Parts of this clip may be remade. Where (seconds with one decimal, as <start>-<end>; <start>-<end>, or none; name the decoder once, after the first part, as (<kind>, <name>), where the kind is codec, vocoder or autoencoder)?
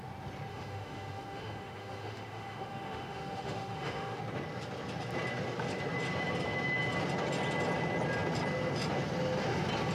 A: 0.5-4.2 (autoencoder, DAC-VAE)